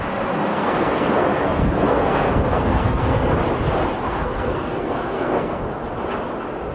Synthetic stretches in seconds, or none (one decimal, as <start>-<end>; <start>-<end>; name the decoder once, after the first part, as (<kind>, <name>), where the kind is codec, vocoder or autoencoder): 0.5-3.3 (codec, SNAC); 4.1-5.6